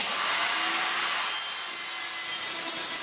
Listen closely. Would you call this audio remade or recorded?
recorded